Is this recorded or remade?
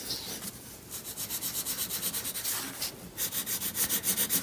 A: recorded